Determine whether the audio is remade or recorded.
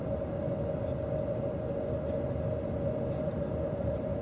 recorded